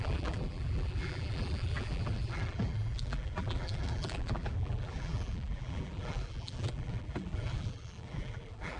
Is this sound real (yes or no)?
no